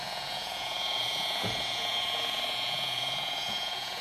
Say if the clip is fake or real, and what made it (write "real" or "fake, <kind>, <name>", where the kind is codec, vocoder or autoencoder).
fake, vocoder, Vocos